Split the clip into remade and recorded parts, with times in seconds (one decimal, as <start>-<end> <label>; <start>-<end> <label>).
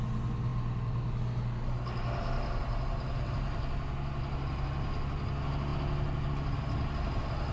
0.0-7.5 recorded